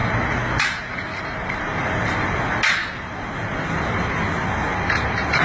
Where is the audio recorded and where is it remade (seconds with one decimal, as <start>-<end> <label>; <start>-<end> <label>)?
0.0-1.2 recorded; 1.2-5.4 remade